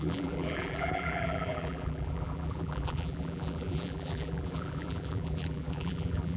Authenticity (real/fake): fake